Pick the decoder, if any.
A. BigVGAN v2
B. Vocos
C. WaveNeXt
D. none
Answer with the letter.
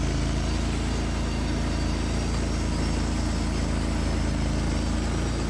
D